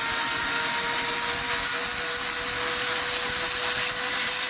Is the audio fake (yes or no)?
no